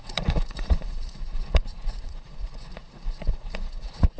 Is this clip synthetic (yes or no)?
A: yes